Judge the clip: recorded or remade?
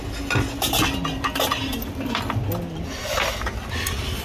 recorded